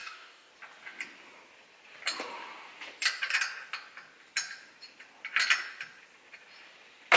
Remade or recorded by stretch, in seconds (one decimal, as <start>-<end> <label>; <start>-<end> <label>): 0.0-0.5 remade; 0.5-7.2 recorded